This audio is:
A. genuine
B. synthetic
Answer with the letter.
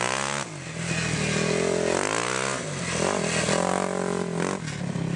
A